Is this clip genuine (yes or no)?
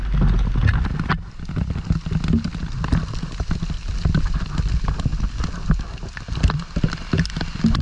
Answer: yes